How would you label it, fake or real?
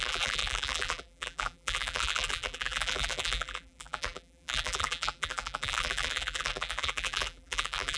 fake